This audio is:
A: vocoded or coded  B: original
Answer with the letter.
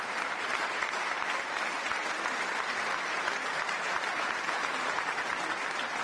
A